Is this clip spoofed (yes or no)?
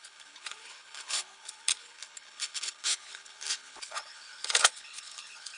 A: yes